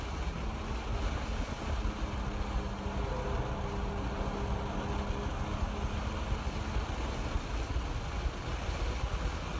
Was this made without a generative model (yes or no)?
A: yes